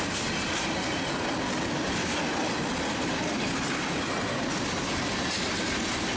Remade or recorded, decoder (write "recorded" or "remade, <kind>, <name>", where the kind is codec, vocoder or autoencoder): recorded